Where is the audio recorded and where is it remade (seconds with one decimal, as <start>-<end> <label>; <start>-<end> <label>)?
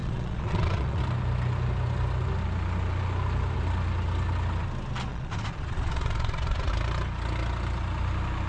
0.0-1.0 remade; 1.0-5.1 recorded; 5.1-6.7 remade; 6.7-8.5 recorded